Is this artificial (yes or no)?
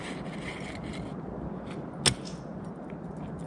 no